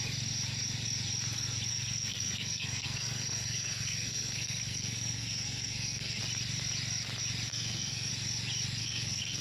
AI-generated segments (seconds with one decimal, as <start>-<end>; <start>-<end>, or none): 1.7-6.2; 7.5-8.1; 8.8-9.4